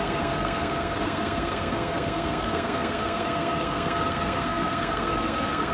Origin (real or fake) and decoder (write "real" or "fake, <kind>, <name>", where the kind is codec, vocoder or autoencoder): fake, codec, SNAC